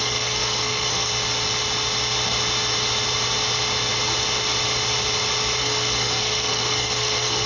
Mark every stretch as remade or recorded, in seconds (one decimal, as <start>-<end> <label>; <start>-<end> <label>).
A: 0.0-1.1 remade; 1.1-5.6 recorded; 5.6-7.5 remade